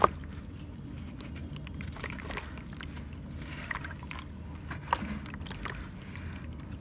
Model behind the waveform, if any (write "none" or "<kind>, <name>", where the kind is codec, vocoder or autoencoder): none